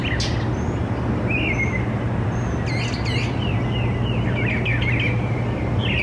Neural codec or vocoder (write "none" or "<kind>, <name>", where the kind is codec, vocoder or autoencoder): none